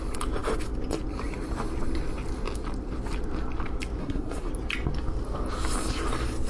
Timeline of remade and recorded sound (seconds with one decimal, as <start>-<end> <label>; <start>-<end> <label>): 0.0-4.0 recorded; 4.0-4.5 remade; 4.5-6.5 recorded